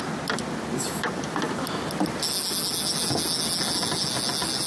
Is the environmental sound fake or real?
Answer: real